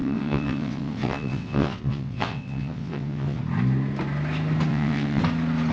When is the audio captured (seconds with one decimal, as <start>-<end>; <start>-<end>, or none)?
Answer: 3.4-4.7; 5.2-5.7